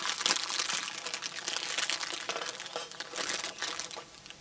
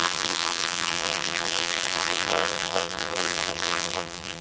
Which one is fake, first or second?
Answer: second